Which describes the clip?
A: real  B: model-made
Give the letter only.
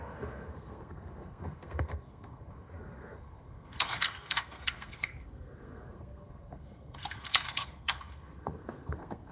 B